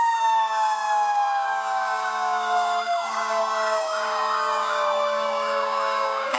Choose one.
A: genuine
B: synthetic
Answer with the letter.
B